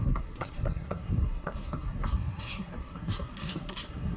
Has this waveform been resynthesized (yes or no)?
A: yes